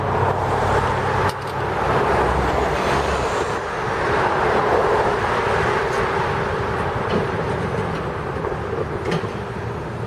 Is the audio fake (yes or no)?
no